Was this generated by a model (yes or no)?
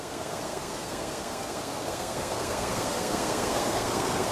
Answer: yes